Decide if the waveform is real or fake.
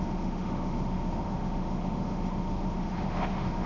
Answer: fake